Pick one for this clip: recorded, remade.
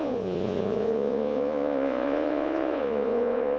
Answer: remade